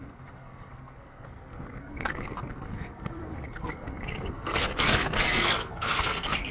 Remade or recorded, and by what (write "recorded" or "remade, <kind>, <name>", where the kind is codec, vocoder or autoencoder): remade, codec, SNAC